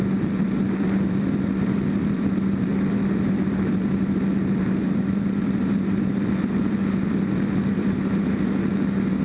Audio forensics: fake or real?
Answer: fake